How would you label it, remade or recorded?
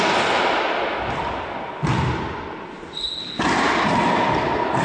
recorded